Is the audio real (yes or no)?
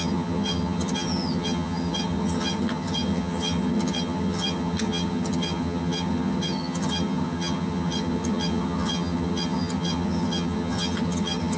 no